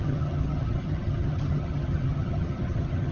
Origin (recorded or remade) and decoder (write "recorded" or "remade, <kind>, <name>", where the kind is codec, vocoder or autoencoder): remade, vocoder, HiFi-GAN